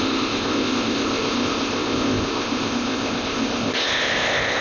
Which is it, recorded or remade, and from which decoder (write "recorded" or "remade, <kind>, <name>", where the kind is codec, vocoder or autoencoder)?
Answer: remade, codec, ZipCodec